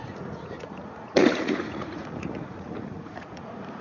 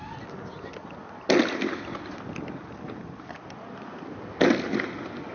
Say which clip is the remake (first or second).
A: first